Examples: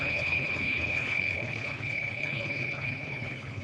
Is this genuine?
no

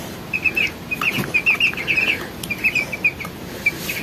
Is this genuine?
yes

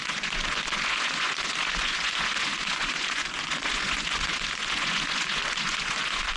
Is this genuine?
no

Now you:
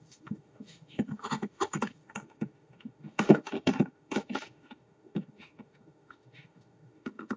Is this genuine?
no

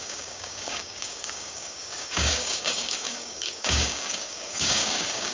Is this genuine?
no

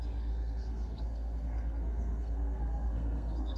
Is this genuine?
no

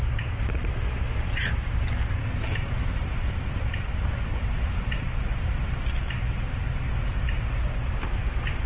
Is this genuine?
yes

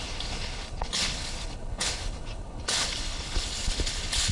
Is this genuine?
no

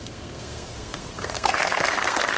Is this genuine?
no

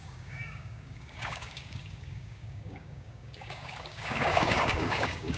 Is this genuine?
no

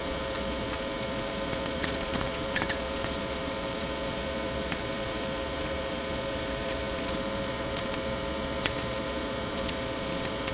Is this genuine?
no